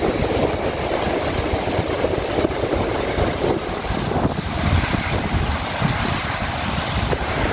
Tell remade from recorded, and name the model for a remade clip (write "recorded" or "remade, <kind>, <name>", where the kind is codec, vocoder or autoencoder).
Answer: recorded